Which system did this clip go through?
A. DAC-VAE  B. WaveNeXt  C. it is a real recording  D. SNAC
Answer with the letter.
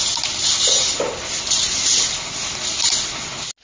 C